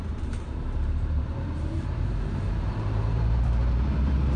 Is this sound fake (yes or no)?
yes